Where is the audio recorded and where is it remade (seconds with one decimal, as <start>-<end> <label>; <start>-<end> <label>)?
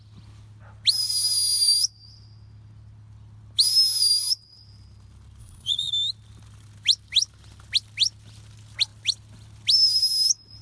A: 0.0-5.4 recorded; 5.4-5.9 remade; 5.9-10.6 recorded